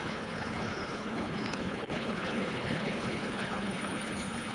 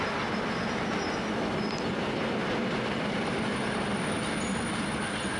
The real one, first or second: second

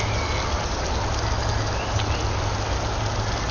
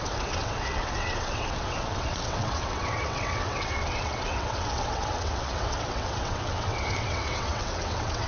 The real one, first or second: first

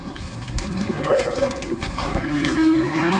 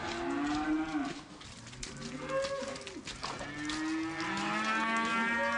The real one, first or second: second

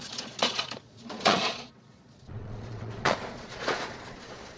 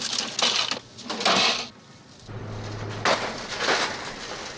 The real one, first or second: second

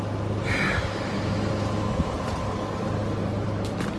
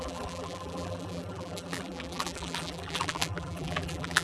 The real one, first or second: first